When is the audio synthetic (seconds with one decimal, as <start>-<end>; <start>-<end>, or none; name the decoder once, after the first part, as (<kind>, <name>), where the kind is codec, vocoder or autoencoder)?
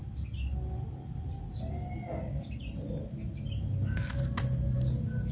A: none